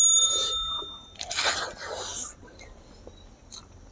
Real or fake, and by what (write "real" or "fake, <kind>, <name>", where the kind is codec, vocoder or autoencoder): real